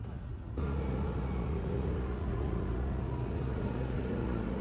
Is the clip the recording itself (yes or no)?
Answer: no